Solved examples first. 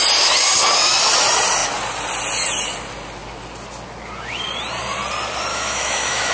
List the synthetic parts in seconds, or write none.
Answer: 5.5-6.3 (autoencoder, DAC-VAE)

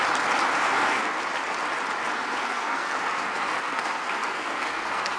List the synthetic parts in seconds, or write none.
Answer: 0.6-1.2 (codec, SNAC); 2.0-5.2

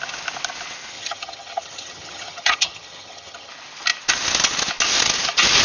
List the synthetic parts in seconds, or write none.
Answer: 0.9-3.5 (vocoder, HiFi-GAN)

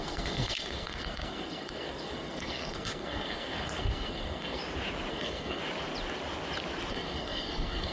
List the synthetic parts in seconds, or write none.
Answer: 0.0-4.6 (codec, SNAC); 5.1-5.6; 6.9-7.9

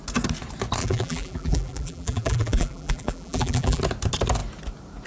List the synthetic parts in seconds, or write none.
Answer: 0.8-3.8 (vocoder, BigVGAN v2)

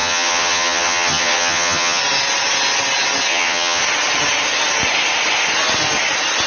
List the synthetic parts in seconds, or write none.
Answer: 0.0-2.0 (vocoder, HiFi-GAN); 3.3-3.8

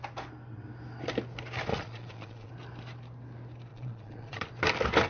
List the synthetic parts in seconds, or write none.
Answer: 1.7-2.5 (vocoder, Vocos); 3.7-4.5